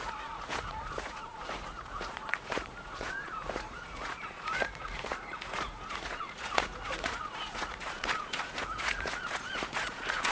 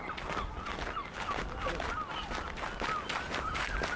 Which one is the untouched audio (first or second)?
second